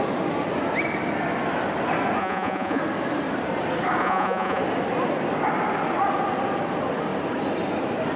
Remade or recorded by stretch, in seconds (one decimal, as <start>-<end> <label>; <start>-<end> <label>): 0.0-2.2 recorded; 2.2-2.8 remade; 2.8-4.0 recorded; 4.0-4.6 remade; 4.6-8.2 recorded